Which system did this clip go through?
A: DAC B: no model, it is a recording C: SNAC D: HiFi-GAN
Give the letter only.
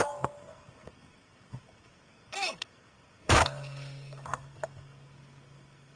C